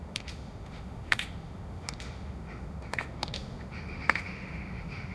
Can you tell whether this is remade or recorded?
remade